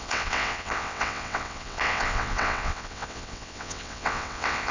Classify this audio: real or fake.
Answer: fake